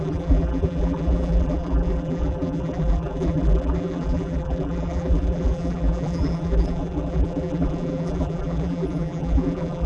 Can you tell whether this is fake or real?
fake